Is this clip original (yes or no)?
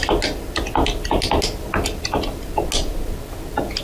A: yes